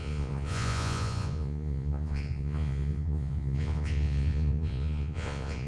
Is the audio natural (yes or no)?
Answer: no